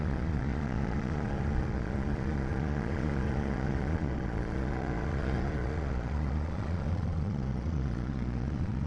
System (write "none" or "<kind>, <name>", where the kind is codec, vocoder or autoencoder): vocoder, Vocos